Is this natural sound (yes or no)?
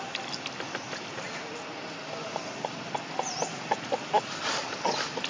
yes